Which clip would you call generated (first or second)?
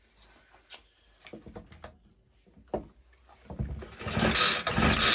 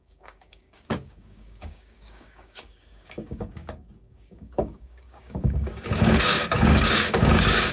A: second